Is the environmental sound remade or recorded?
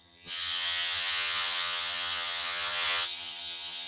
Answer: remade